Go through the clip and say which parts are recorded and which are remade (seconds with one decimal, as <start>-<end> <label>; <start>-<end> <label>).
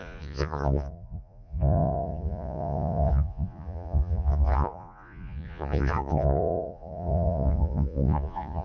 0.0-8.6 remade